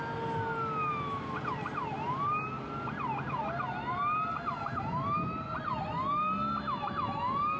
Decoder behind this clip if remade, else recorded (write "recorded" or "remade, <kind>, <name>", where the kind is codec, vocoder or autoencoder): recorded